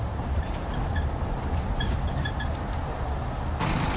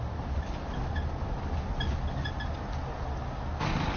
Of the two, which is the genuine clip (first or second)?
second